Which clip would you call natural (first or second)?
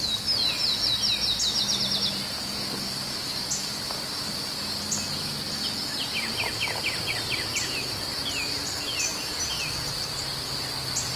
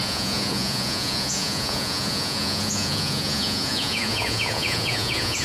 first